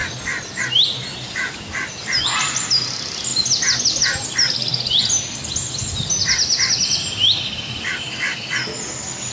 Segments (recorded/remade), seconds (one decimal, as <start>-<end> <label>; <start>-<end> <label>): 0.0-9.3 recorded